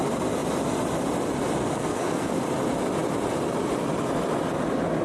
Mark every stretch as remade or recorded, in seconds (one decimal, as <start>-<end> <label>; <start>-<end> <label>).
0.0-1.6 recorded; 1.6-2.4 remade; 2.4-5.0 recorded